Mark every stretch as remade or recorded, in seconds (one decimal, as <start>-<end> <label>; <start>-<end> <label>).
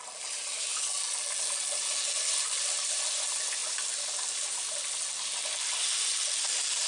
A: 0.0-6.9 recorded